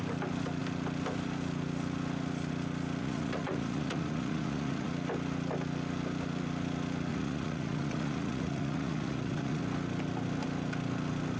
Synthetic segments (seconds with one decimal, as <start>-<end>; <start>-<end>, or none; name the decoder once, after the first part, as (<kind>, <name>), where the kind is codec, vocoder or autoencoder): 3.0-4.9 (vocoder, Vocos); 7.1-9.6